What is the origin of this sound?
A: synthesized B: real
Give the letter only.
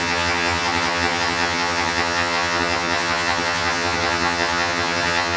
A